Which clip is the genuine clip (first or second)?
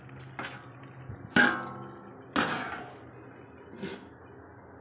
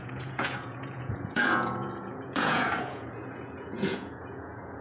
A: first